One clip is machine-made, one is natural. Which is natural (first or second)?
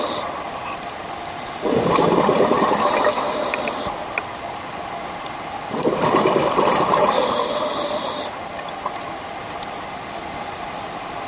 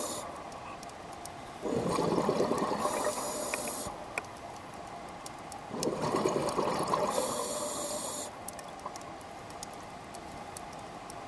second